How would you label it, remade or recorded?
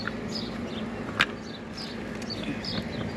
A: recorded